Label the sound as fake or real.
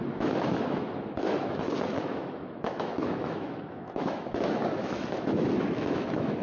fake